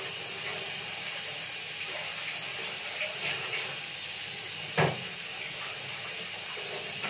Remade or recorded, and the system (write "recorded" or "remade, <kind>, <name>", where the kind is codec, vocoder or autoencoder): recorded